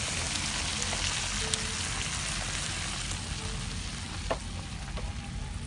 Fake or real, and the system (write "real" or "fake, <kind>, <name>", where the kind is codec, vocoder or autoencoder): real